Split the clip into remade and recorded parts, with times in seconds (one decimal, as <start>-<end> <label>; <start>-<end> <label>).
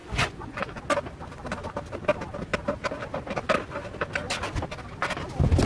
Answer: 0.0-0.8 remade; 0.8-5.7 recorded